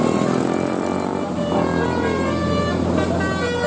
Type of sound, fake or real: real